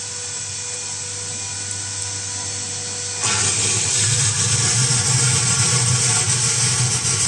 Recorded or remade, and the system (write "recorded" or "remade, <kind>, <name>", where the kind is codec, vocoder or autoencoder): recorded